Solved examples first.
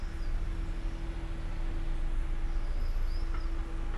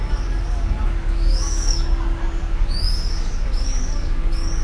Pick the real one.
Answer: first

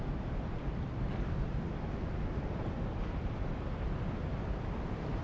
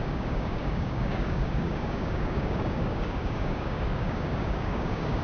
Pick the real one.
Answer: first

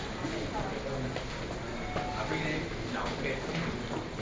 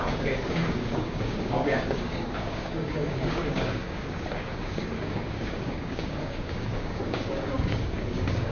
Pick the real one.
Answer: first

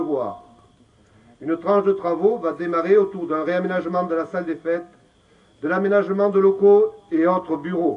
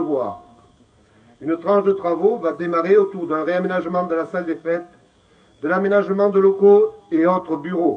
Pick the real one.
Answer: first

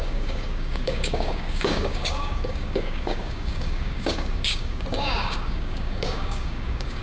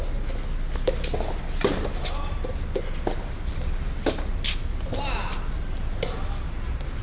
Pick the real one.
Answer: second